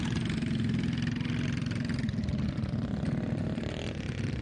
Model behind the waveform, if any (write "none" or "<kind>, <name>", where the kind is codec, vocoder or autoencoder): none